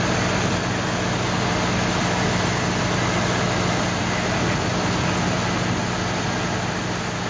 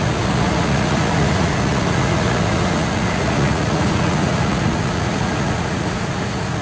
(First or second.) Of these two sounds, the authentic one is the first